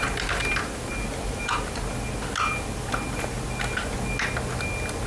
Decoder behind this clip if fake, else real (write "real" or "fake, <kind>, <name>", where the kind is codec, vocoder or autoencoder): real